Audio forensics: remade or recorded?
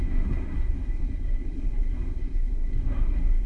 remade